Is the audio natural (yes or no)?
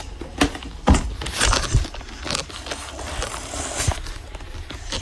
yes